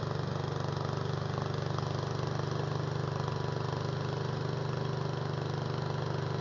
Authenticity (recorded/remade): recorded